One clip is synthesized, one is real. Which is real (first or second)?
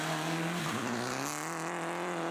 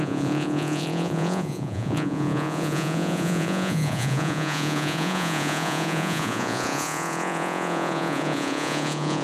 first